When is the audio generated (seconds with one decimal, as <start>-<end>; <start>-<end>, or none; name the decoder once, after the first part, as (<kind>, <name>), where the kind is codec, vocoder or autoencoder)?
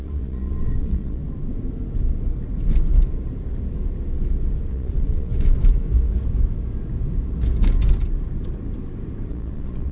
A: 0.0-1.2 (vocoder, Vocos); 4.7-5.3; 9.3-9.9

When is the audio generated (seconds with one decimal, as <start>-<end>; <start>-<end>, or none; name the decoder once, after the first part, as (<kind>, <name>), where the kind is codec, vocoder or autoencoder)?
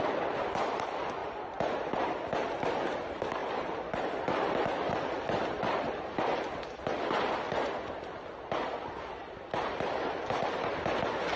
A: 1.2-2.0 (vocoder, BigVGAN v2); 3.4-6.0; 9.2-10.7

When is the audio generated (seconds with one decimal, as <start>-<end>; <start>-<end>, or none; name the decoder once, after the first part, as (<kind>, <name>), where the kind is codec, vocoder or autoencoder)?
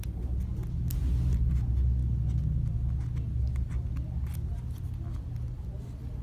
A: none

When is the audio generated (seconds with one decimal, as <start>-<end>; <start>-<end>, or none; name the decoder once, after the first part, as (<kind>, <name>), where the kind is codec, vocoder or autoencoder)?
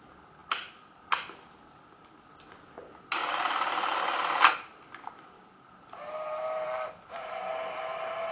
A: none